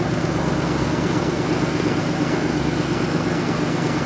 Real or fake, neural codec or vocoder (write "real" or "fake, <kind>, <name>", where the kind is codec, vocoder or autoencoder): fake, codec, SNAC